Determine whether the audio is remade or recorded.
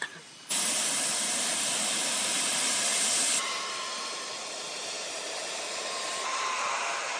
remade